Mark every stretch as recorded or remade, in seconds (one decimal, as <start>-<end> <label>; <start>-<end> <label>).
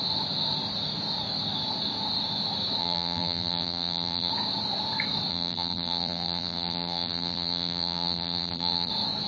0.0-2.8 recorded; 2.8-4.3 remade; 4.3-5.3 recorded; 5.3-8.9 remade; 8.9-9.3 recorded